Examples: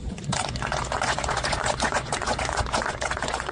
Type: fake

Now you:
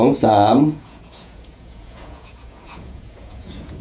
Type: fake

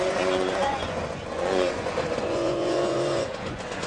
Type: fake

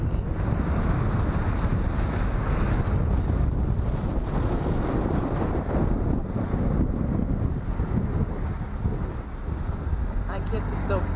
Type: real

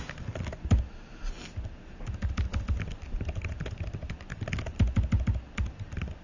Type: real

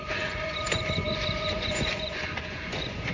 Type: fake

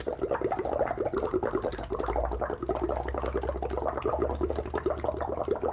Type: real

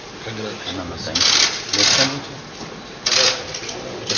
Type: real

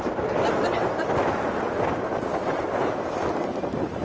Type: real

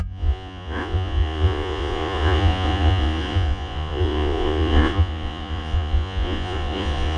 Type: fake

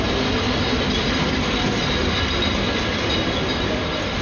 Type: real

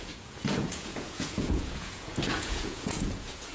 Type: fake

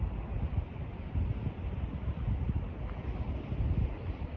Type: real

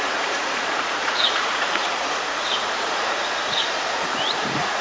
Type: fake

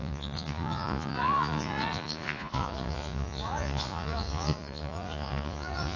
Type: fake